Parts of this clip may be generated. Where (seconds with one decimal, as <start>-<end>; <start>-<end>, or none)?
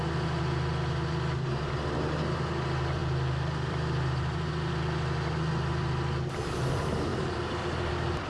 3.0-4.7; 7.1-7.9